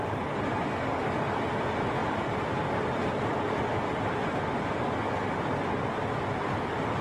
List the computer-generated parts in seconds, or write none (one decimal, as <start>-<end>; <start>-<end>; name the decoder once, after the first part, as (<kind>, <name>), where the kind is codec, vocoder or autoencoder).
2.0-6.2 (vocoder, BigVGAN v2)